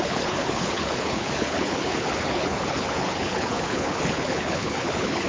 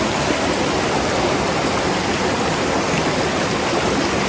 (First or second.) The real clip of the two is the second